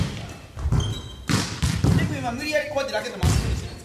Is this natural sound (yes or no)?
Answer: yes